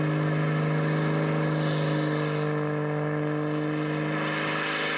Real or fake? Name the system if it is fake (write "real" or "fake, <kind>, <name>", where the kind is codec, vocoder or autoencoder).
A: real